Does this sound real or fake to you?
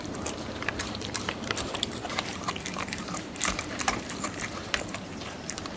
fake